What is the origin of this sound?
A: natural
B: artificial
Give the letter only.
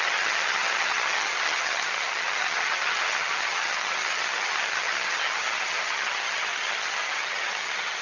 B